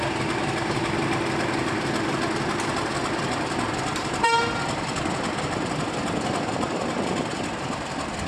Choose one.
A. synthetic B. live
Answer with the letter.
B